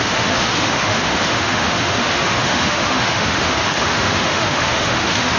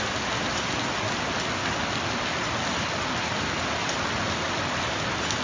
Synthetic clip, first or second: first